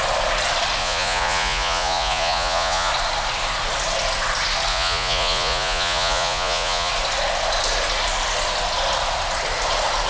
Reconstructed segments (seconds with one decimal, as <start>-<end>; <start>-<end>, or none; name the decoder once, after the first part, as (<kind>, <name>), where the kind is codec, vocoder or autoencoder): 0.8-2.9 (vocoder, Vocos); 4.7-6.9